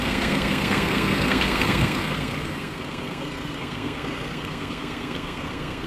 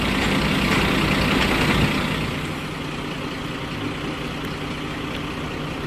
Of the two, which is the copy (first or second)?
first